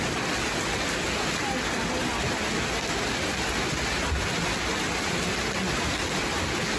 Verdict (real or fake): real